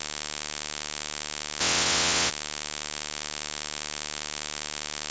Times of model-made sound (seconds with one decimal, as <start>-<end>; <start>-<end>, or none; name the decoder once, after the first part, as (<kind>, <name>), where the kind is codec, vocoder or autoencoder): 1.6-2.3 (vocoder, WaveNeXt)